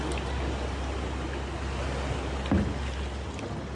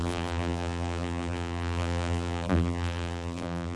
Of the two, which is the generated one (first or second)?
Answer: second